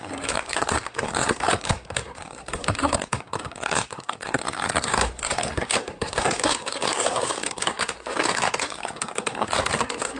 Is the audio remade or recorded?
remade